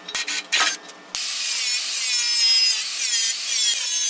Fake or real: real